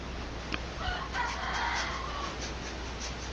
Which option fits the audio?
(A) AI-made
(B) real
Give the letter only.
B